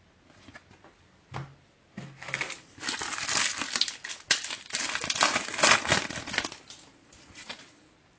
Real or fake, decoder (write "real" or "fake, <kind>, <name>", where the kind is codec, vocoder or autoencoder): real